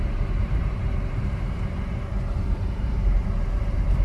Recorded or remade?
remade